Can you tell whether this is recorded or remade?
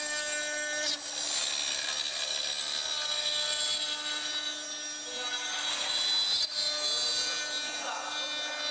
recorded